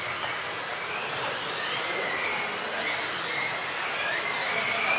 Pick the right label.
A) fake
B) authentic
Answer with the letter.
B